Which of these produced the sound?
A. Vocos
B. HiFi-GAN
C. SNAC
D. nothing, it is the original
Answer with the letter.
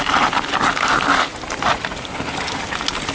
D